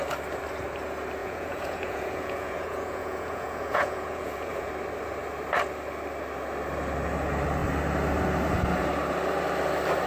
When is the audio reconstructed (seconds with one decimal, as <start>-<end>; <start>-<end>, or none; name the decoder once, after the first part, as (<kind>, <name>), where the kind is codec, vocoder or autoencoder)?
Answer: 1.2-4.7 (vocoder, Vocos)